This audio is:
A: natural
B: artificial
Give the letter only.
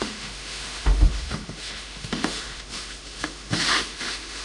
B